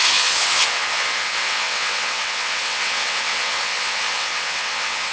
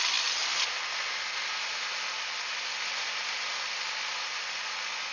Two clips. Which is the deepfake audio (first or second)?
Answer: first